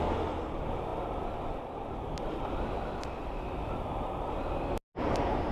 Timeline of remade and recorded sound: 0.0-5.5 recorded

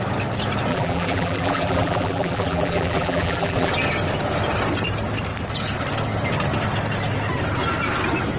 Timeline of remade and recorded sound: 0.0-0.7 recorded; 0.7-3.7 remade; 3.7-8.4 recorded

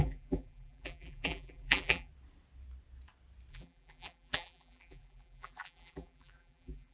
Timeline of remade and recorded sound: 0.0-2.1 remade; 2.1-3.5 recorded; 3.5-6.9 remade

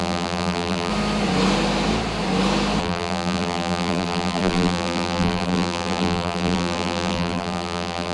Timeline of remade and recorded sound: 0.0-0.9 remade; 0.9-2.8 recorded; 2.8-8.1 remade

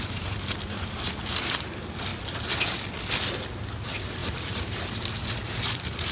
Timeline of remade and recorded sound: 0.0-2.1 remade; 2.1-3.4 recorded; 3.4-6.1 remade